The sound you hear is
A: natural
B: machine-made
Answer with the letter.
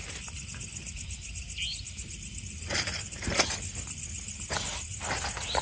A